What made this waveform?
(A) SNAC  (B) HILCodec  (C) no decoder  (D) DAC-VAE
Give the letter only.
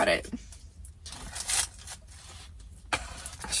C